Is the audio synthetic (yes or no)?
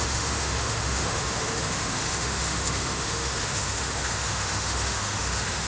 yes